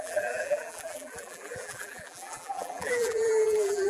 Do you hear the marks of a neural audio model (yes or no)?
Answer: yes